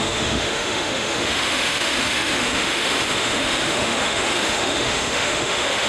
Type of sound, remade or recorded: remade